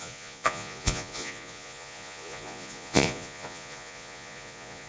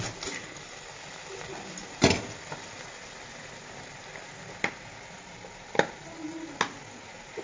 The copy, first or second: first